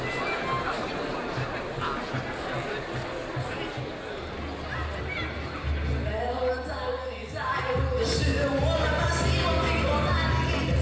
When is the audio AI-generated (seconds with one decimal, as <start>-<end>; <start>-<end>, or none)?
none